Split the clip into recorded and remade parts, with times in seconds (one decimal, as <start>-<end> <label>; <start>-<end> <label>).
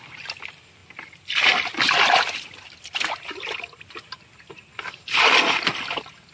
0.0-6.3 recorded